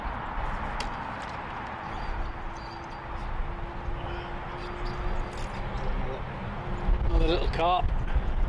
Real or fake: real